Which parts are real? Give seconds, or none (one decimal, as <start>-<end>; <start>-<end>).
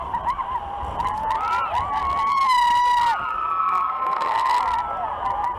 0.0-3.6; 4.6-5.6